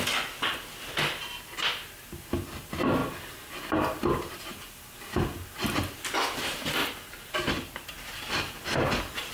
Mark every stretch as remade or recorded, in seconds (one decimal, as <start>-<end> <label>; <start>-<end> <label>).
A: 0.0-9.3 recorded